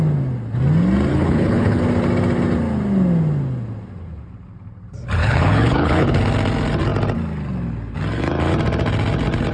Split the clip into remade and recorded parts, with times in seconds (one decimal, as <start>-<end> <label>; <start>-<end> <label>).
0.0-1.1 recorded; 1.1-1.8 remade; 1.8-5.2 recorded; 5.2-6.2 remade; 6.2-9.5 recorded